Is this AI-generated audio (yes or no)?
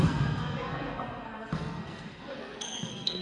yes